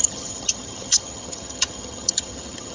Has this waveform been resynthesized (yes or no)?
yes